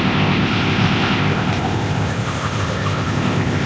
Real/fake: fake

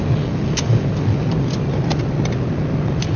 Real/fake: fake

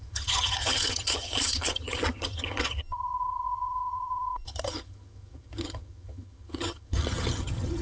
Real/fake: fake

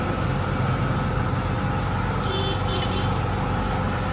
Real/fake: real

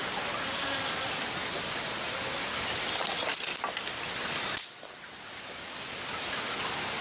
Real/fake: real